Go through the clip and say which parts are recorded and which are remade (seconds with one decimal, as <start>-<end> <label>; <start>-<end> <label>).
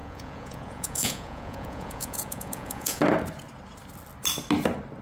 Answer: 0.0-3.0 remade; 3.0-5.0 recorded